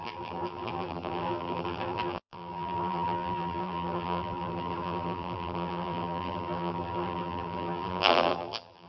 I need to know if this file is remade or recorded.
remade